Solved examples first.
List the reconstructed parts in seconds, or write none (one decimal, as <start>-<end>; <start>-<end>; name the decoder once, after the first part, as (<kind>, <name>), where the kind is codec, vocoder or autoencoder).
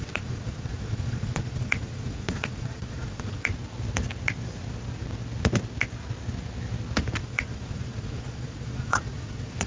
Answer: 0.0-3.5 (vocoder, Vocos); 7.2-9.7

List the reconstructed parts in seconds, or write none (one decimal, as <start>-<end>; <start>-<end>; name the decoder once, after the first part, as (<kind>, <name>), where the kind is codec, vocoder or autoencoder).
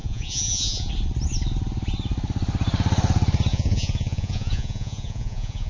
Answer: 0.0-0.9 (vocoder, Vocos); 3.5-5.7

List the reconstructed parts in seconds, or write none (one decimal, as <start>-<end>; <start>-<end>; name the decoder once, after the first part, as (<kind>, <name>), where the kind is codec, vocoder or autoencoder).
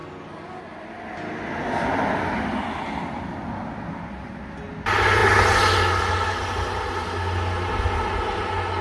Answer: none